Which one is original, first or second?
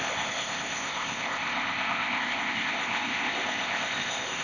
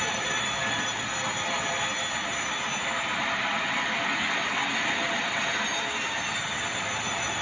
second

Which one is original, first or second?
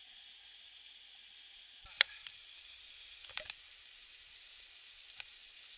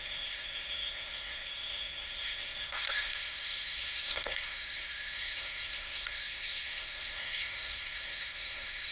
first